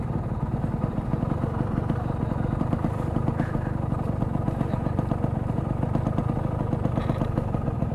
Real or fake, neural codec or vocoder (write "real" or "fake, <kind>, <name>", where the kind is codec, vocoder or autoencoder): fake, vocoder, BigVGAN v2